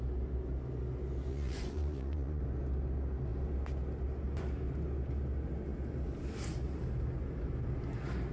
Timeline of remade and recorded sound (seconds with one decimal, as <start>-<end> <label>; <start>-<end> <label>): 0.0-1.3 recorded; 1.3-2.4 remade; 2.4-8.3 recorded